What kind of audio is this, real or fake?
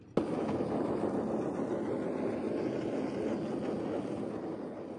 real